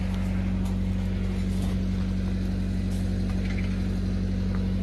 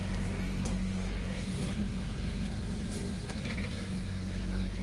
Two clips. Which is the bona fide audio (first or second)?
first